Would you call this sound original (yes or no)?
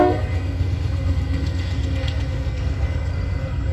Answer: no